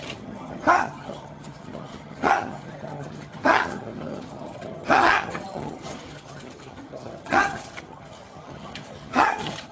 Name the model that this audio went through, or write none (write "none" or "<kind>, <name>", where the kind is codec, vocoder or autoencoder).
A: vocoder, HiFi-GAN